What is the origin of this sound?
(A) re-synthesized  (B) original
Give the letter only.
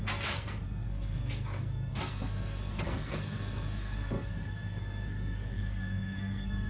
A